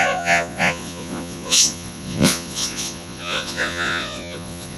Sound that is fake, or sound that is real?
fake